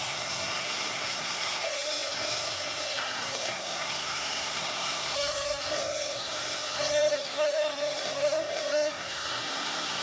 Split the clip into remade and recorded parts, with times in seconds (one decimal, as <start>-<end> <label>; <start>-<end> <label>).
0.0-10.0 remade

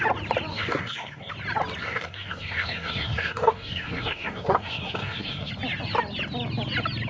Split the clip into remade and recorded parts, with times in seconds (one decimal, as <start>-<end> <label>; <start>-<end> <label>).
0.0-0.5 recorded; 0.5-1.3 remade; 1.3-1.8 recorded; 1.8-5.5 remade; 5.5-7.1 recorded

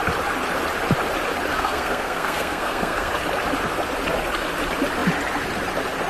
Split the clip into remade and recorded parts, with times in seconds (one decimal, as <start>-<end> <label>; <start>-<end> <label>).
0.0-1.5 recorded; 1.5-3.1 remade; 3.1-6.1 recorded